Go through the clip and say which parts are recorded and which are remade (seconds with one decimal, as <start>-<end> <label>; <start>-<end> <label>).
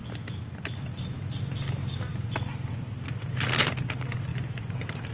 0.0-5.1 recorded